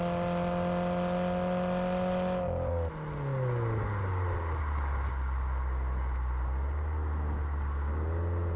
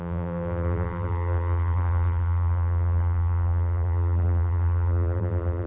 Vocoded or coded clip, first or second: second